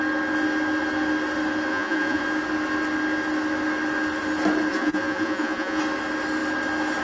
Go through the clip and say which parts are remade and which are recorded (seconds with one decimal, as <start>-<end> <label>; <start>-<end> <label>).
0.0-1.7 recorded; 1.7-2.2 remade; 2.2-4.7 recorded; 4.7-5.8 remade; 5.8-7.0 recorded